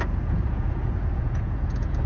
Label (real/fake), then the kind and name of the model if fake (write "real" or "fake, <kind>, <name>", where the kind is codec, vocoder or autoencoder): fake, vocoder, Vocos